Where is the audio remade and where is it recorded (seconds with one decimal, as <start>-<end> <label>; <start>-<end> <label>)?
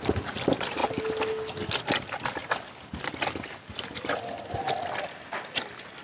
0.0-6.0 recorded